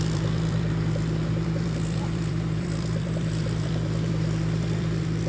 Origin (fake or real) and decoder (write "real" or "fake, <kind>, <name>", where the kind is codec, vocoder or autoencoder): fake, vocoder, BigVGAN v2